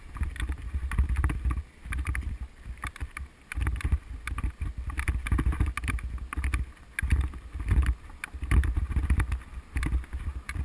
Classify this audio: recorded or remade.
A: recorded